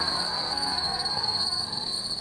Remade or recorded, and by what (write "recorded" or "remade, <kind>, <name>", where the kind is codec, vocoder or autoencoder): remade, codec, SNAC